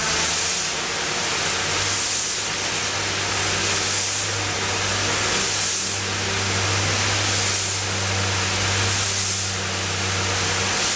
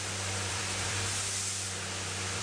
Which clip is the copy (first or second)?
second